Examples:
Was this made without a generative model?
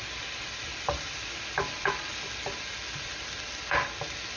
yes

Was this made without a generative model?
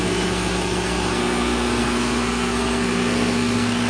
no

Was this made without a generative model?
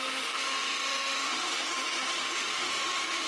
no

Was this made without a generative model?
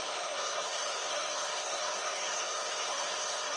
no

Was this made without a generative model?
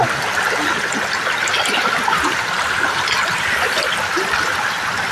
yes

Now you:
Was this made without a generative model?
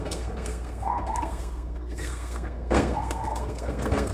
no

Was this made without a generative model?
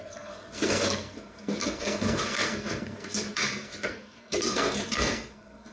no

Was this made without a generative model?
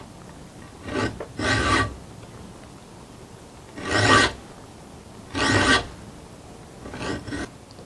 yes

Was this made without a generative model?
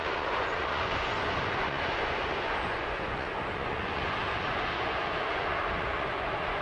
no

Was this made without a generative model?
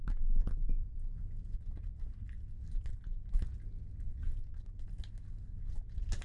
yes